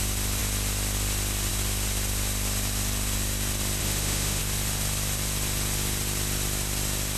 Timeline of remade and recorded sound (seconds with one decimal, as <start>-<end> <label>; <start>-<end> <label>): 0.0-3.8 recorded; 3.8-4.4 remade; 4.4-7.2 recorded